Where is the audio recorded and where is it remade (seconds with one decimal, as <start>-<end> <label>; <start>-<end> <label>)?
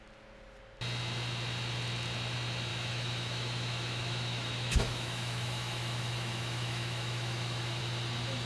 0.0-2.7 recorded; 2.7-7.8 remade; 7.8-8.5 recorded